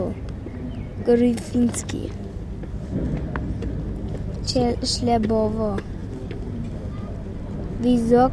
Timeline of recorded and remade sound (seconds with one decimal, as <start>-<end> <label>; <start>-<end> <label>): 0.0-8.3 recorded